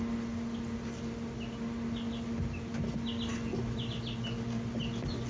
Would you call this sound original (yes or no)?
yes